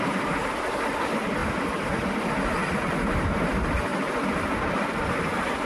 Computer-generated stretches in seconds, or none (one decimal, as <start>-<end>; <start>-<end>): 0.0-2.6; 3.1-3.9; 5.0-5.6